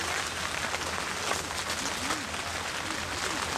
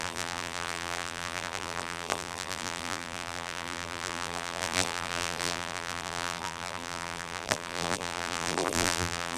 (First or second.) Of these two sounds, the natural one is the first